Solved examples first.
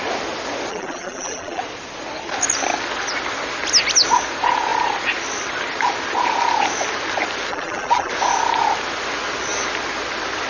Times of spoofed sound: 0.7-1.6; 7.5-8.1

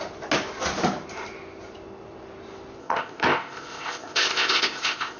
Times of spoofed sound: 2.8-5.2

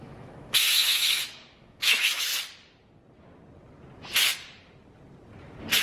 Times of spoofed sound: 0.0-2.3

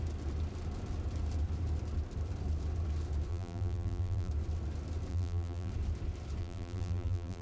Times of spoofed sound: 3.3-4.3; 5.1-5.7; 6.4-7.4

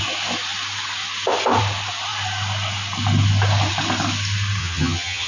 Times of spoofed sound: 4.6-5.3